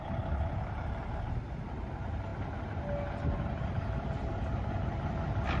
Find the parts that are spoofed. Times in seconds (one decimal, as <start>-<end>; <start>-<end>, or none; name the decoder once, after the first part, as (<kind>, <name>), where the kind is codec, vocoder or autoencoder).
none